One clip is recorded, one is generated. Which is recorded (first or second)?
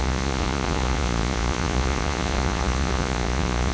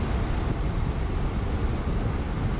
second